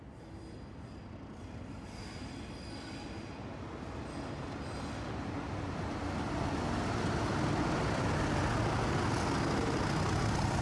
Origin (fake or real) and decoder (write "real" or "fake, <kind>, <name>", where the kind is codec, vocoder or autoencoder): real